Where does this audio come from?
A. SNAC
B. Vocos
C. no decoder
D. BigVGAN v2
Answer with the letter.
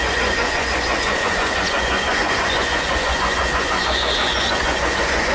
B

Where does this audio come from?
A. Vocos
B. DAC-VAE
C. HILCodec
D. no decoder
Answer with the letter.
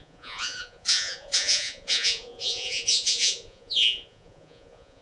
A